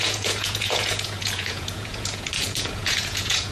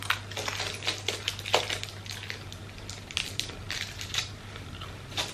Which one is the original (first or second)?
second